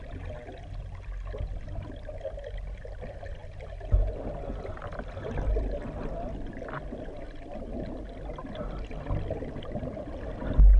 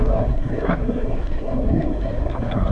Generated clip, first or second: second